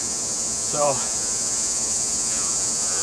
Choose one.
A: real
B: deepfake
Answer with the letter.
B